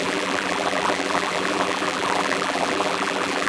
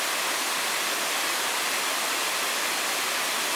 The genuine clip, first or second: second